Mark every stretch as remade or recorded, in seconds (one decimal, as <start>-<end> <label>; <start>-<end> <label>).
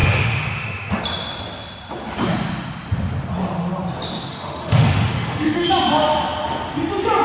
0.0-1.0 remade; 1.0-4.3 recorded; 4.3-5.7 remade; 5.7-7.2 recorded